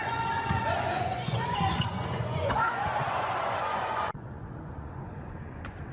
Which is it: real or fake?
fake